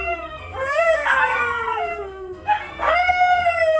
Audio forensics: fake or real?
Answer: fake